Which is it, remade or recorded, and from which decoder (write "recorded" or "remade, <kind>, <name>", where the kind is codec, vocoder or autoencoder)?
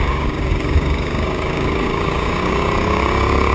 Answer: remade, codec, DAC